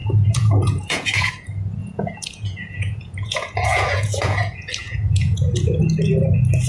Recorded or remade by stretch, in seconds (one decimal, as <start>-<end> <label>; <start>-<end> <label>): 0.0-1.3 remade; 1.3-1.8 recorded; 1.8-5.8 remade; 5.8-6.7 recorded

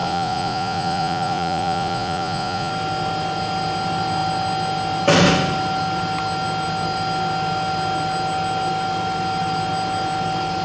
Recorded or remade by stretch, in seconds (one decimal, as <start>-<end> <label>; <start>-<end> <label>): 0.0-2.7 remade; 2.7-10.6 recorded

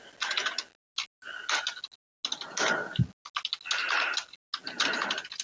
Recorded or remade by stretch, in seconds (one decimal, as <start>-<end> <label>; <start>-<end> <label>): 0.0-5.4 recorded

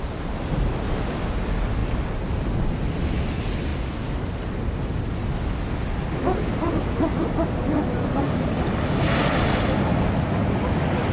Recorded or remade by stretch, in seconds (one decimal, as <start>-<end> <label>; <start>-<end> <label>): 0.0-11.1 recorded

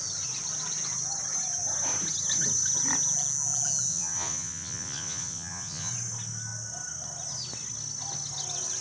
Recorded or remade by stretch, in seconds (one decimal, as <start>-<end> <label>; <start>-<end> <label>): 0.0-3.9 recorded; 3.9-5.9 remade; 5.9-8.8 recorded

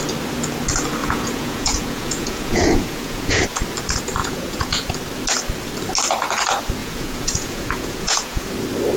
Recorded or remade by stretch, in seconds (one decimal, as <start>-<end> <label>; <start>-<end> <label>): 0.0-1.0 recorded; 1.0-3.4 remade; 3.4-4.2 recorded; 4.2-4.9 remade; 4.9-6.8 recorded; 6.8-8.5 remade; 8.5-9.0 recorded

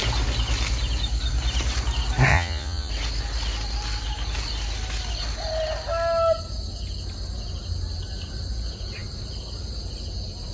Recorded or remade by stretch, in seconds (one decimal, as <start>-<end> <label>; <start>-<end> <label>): 0.0-2.3 recorded; 2.3-2.9 remade; 2.9-10.5 recorded